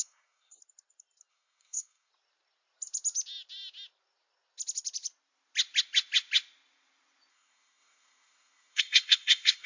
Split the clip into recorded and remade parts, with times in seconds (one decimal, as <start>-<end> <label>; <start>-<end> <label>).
0.0-0.6 remade; 0.6-1.3 recorded; 1.3-2.1 remade; 2.1-7.3 recorded; 7.3-9.7 remade